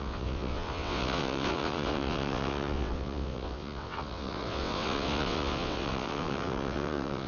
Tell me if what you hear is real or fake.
fake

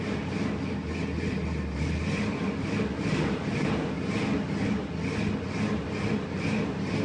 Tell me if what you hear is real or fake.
real